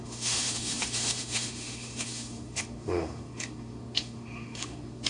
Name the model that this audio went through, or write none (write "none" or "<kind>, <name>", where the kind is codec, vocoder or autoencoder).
autoencoder, DAC-VAE